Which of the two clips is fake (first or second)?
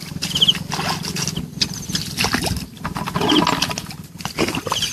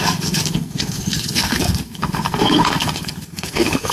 second